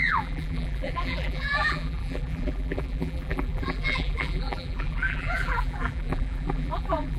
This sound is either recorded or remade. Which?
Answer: remade